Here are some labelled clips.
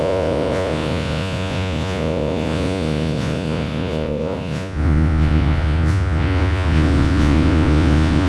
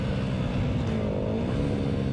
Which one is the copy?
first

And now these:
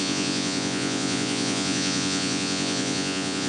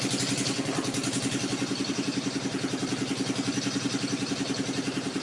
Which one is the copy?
first